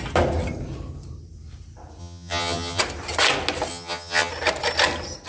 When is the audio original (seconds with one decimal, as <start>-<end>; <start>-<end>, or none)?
0.0-2.0; 2.8-3.7; 4.3-5.3